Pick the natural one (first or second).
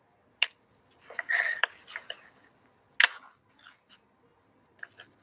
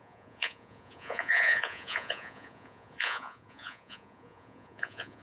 first